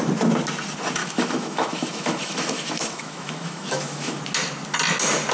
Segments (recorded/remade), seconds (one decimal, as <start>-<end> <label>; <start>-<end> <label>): 0.0-1.0 recorded; 1.0-4.2 remade; 4.2-5.3 recorded